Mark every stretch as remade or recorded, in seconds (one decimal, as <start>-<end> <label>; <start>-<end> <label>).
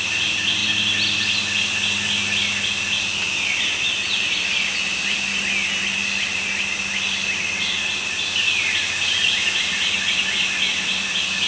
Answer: 0.0-11.5 recorded